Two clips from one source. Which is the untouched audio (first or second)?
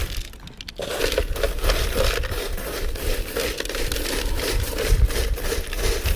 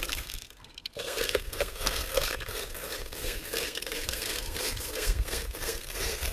first